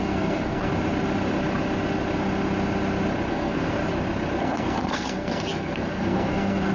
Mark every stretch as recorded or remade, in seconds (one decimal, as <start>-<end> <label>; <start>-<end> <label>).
0.0-0.7 remade; 0.7-3.3 recorded; 3.3-3.8 remade; 3.8-4.4 recorded; 4.4-6.7 remade